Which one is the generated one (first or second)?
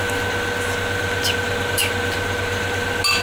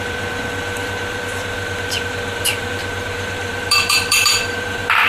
second